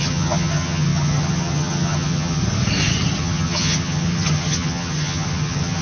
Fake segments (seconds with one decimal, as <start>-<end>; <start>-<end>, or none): 0.0-2.4; 3.2-5.8